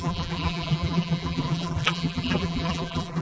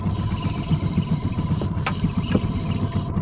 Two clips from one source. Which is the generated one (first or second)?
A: first